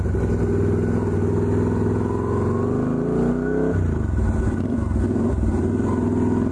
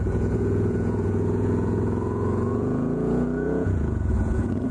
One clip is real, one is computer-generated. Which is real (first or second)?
first